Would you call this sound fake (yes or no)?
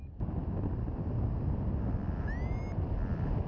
no